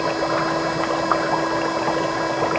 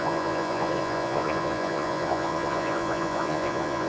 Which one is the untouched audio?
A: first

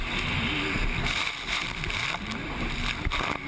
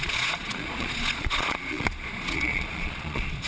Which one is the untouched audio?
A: first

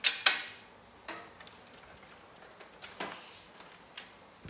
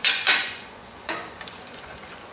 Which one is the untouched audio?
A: first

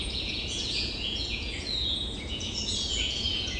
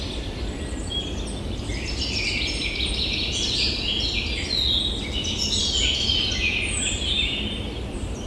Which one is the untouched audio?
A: second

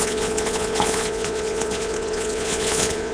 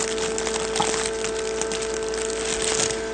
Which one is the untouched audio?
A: second